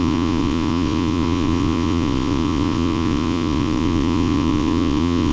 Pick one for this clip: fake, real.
fake